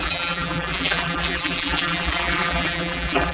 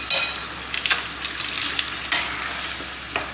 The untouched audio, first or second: second